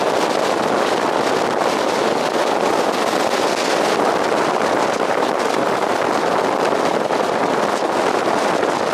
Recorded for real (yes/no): yes